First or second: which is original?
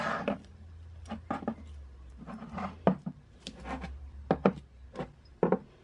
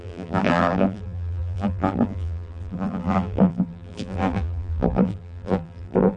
first